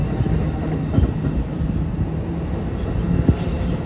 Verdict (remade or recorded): recorded